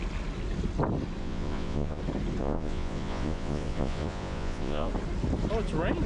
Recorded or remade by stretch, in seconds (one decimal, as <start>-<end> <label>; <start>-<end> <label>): 0.0-1.2 recorded; 1.2-2.0 remade; 2.0-2.4 recorded; 2.4-4.9 remade; 4.9-6.1 recorded